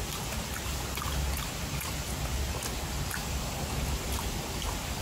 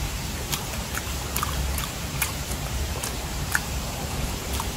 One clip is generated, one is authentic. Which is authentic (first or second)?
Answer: first